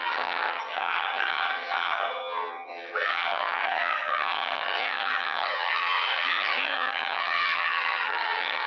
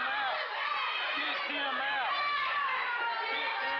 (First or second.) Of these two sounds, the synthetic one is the first